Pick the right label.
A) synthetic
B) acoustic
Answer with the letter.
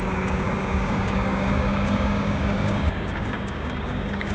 A